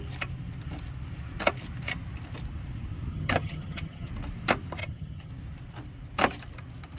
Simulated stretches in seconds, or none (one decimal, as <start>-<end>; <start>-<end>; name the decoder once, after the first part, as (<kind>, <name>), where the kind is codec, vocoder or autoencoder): 3.1-4.1 (vocoder, HiFi-GAN); 4.8-5.3